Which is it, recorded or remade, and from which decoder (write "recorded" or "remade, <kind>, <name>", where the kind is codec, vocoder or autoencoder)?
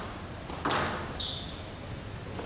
recorded